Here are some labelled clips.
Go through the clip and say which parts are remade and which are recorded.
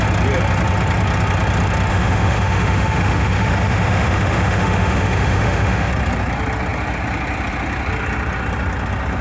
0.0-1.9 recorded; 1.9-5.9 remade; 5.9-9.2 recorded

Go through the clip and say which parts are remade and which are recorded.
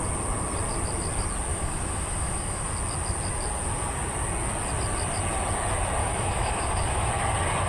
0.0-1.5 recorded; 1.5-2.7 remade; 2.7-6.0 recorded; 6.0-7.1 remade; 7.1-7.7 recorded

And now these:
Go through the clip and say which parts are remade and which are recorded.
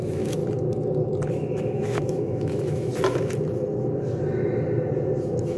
0.0-0.4 remade; 0.4-1.3 recorded; 1.3-2.9 remade; 2.9-5.6 recorded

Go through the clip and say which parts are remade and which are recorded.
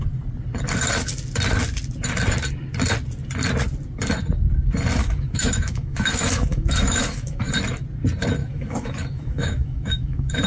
0.0-5.0 recorded; 5.0-7.5 remade; 7.5-8.4 recorded; 8.4-10.5 remade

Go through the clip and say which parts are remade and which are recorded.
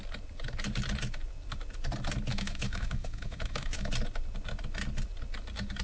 0.0-2.3 recorded; 2.3-3.9 remade; 3.9-5.8 recorded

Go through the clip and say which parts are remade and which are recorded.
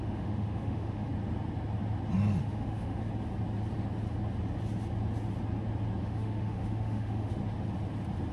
0.0-1.1 remade; 1.1-2.4 recorded; 2.4-3.0 remade; 3.0-6.0 recorded; 6.0-7.4 remade; 7.4-8.3 recorded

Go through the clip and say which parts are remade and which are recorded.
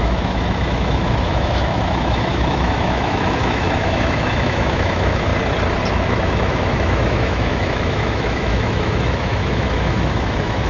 0.0-5.3 remade; 5.3-5.9 recorded; 5.9-10.7 remade